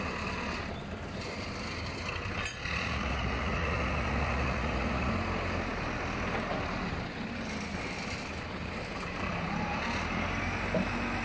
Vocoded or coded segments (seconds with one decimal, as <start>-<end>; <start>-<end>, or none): 2.5-5.1